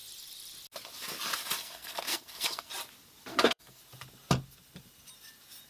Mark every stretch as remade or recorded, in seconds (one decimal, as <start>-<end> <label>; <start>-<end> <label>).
0.0-1.6 recorded; 1.6-2.7 remade; 2.7-3.3 recorded; 3.3-3.8 remade; 3.8-5.7 recorded